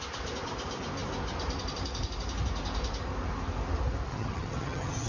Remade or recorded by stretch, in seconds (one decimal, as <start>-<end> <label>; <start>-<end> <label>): 0.0-4.1 recorded; 4.1-5.1 remade